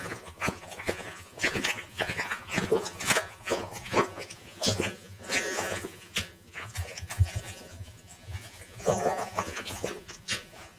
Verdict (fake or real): fake